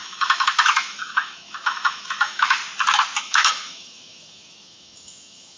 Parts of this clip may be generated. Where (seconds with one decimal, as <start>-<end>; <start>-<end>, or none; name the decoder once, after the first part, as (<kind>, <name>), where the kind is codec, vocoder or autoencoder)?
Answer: 0.0-2.6 (autoencoder, DAC-VAE); 3.2-5.6